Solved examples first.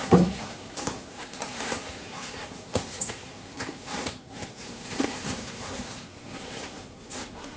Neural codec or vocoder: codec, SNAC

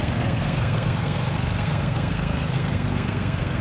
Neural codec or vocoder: codec, SNAC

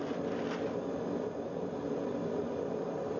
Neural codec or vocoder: none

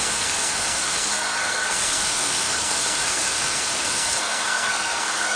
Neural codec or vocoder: codec, SNAC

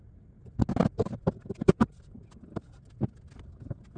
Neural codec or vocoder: none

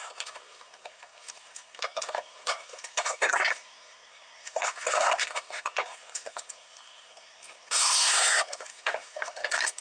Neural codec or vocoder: codec, SNAC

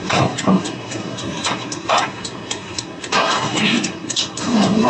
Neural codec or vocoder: codec, SNAC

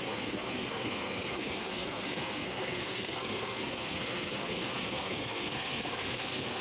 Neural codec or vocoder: codec, SNAC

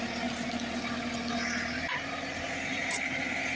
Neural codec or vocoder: none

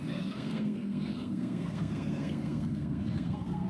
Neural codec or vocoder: codec, SNAC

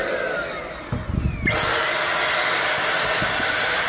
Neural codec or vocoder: none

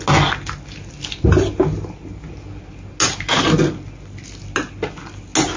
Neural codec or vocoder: none